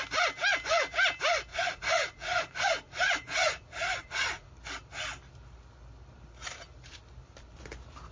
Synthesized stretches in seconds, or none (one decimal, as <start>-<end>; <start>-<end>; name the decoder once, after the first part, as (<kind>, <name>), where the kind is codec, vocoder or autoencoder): 1.5-4.5 (vocoder, Vocos)